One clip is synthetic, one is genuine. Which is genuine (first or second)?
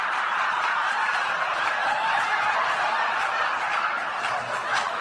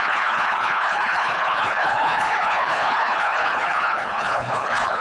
first